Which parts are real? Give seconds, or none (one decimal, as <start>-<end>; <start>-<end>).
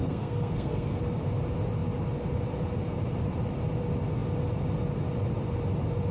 1.0-6.1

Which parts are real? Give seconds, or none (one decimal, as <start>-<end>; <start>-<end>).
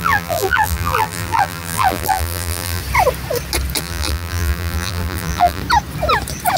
2.8-3.8; 5.6-6.6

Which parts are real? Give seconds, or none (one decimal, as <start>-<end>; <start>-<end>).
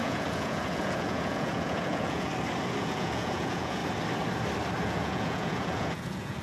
2.3-2.8; 3.8-4.8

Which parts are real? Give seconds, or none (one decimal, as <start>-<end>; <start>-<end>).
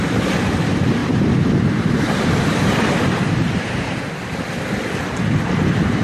0.0-1.0; 4.0-6.0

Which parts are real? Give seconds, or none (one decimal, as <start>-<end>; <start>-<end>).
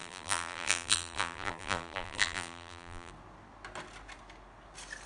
3.1-5.1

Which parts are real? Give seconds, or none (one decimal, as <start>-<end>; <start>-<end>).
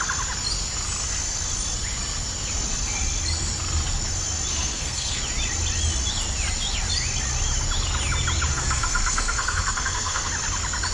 0.0-4.5; 5.2-8.5; 10.3-10.9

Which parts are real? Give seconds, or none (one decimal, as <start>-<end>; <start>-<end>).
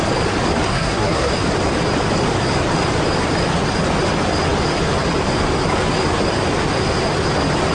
0.0-0.7; 1.3-7.7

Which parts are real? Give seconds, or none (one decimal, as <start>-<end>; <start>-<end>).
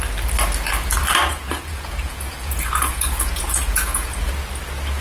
0.0-1.3; 4.3-5.0